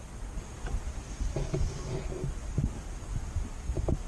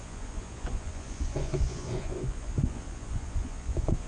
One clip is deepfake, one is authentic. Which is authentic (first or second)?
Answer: first